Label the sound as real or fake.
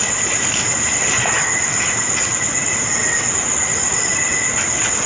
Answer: real